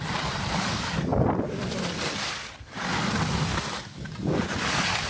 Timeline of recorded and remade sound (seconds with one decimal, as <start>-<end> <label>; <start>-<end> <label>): 0.0-5.1 recorded